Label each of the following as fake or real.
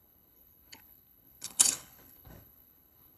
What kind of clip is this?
fake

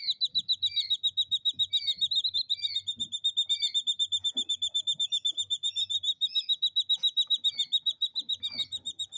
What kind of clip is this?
real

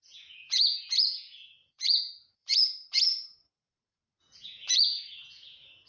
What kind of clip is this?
fake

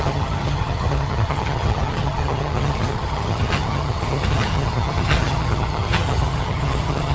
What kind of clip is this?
fake